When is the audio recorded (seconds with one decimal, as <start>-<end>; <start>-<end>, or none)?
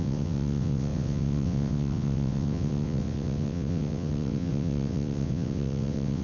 none